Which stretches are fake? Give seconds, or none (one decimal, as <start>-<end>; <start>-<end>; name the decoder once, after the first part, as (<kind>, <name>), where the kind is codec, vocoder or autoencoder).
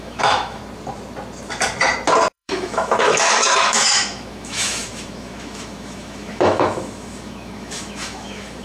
0.0-0.6 (autoencoder, DAC-VAE); 2.3-8.6